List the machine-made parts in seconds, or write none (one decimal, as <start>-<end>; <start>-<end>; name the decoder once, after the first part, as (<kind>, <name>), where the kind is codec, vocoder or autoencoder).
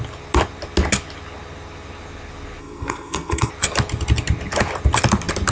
2.6-3.5 (codec, SNAC)